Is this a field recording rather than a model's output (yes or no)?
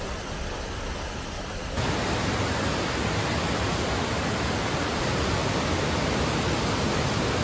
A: yes